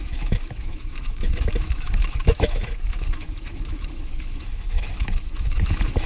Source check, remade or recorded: remade